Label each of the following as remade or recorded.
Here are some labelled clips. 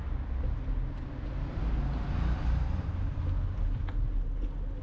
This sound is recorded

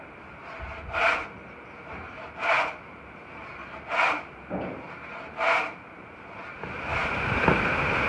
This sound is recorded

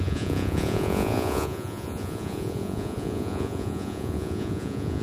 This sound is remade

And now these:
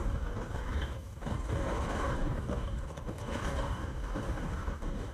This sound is remade